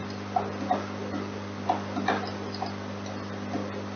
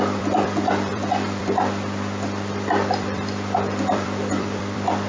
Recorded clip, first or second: first